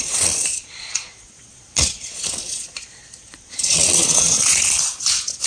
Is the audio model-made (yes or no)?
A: yes